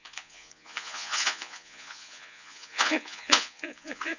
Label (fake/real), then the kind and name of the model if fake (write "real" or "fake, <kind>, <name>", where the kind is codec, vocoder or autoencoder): fake, vocoder, Vocos